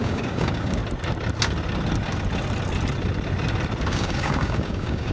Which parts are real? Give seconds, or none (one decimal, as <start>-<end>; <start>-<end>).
0.8-3.9